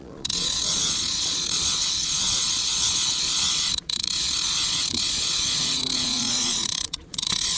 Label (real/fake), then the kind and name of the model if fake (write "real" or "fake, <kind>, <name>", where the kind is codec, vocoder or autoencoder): fake, vocoder, Vocos